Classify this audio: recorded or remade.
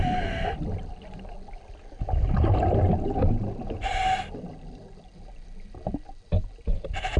recorded